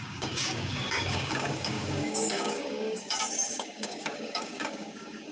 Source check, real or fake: fake